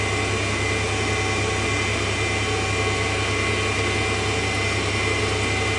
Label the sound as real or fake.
real